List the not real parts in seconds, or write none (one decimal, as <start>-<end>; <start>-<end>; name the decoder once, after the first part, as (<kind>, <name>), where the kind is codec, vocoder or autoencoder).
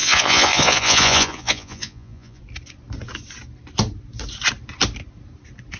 0.0-2.4 (vocoder, Vocos)